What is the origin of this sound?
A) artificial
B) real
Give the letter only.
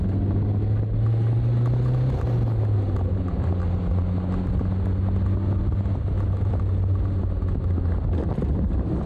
B